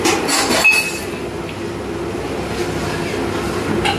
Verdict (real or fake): real